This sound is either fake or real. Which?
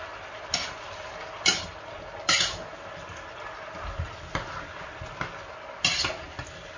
real